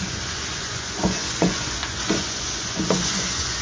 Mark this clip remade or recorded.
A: remade